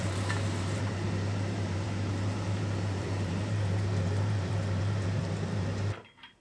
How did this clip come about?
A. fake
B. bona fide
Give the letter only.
A